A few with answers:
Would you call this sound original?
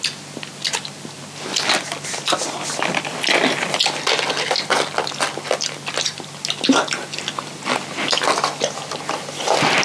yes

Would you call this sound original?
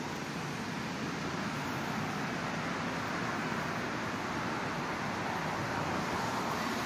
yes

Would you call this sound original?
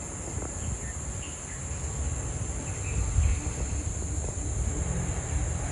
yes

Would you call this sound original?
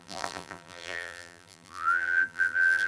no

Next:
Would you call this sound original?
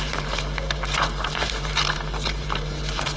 no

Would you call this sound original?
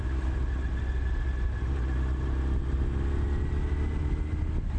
yes